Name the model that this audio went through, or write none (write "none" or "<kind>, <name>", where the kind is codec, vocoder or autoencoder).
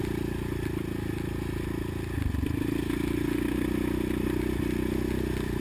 none